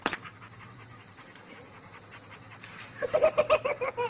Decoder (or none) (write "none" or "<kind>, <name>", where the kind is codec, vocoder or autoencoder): vocoder, BigVGAN v2